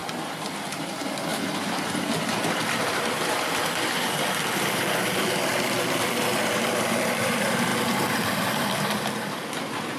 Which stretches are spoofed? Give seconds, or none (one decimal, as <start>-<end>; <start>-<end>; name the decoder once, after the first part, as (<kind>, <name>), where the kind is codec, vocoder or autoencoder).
0.8-7.7 (vocoder, BigVGAN v2); 8.4-10.0